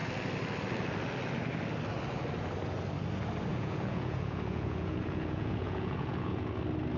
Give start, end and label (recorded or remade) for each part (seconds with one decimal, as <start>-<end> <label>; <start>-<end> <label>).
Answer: 0.0-3.5 recorded; 3.5-6.6 remade; 6.6-7.0 recorded